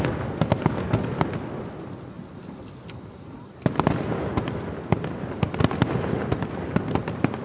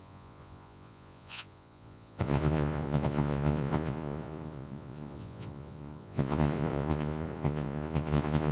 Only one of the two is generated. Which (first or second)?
second